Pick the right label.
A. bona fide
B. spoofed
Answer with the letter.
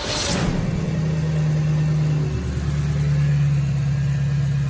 A